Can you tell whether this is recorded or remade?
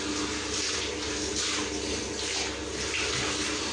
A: recorded